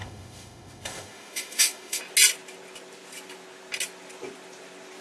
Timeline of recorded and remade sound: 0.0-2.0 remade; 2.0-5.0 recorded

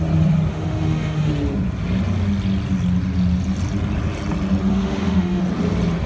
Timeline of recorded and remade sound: 0.0-0.5 recorded; 0.5-1.3 remade; 1.3-4.7 recorded; 4.7-5.4 remade; 5.4-6.1 recorded

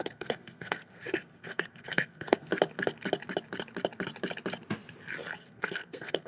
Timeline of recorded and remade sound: 0.0-2.5 remade; 2.5-5.4 recorded; 5.4-6.3 remade

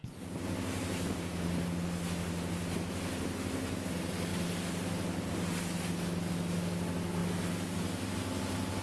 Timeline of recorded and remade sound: 0.0-8.8 recorded

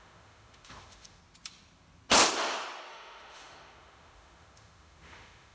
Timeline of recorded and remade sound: 0.0-1.2 remade; 1.2-2.9 recorded; 2.9-5.5 remade

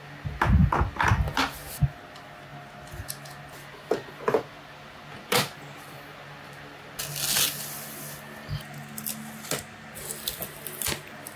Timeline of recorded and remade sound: 0.0-11.4 recorded